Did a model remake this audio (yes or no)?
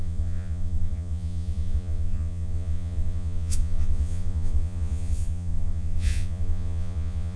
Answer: yes